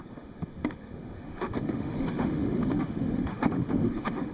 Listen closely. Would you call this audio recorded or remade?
remade